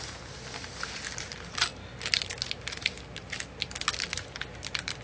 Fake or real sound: real